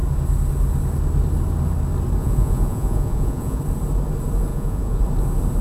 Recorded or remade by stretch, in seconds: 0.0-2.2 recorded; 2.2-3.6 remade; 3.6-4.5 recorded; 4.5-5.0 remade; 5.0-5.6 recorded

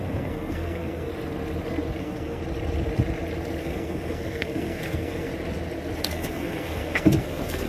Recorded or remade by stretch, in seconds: 0.0-1.1 remade; 1.1-2.0 recorded; 2.0-2.4 remade; 2.4-3.6 recorded; 3.6-5.3 remade; 5.3-6.0 recorded; 6.0-7.7 remade